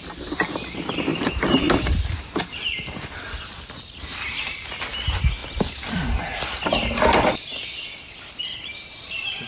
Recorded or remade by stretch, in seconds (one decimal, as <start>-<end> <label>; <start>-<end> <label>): 0.0-1.1 recorded; 1.1-3.1 remade; 3.1-9.5 recorded